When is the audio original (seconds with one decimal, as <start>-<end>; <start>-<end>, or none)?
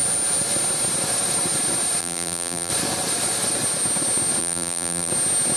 0.0-2.0; 2.7-4.4; 5.1-5.6